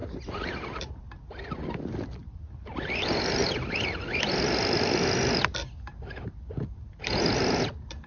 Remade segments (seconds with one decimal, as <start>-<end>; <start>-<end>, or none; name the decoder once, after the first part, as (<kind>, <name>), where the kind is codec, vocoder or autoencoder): none